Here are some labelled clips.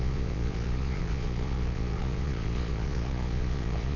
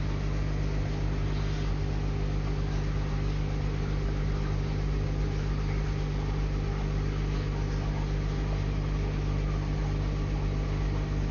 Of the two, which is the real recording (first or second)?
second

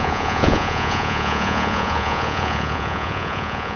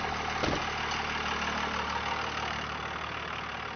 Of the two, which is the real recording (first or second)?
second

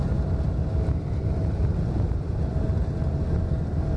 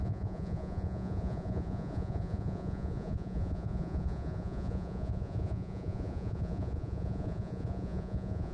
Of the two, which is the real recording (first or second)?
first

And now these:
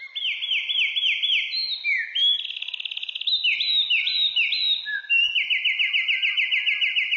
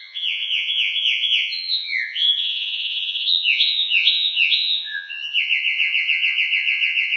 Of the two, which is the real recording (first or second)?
first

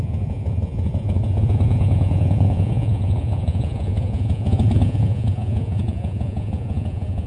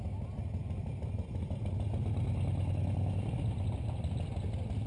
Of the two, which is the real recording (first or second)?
second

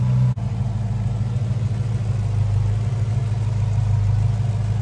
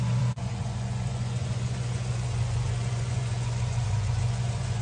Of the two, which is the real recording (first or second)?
first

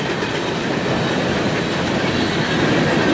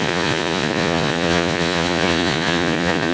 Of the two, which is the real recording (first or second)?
first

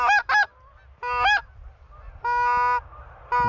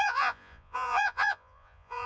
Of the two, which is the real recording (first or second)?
first